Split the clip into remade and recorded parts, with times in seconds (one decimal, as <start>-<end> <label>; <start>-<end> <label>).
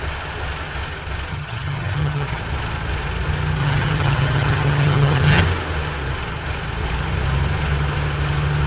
0.0-1.3 recorded; 1.3-2.4 remade; 2.4-3.6 recorded; 3.6-5.4 remade; 5.4-8.7 recorded